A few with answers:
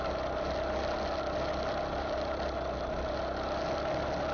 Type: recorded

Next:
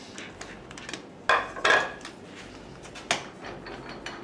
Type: recorded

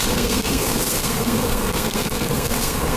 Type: remade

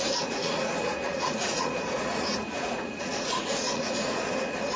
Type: remade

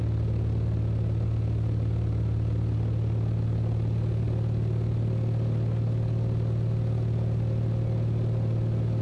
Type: recorded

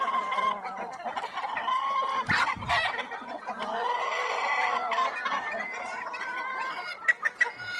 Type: recorded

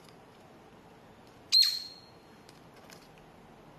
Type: recorded